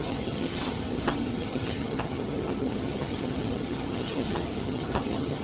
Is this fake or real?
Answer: fake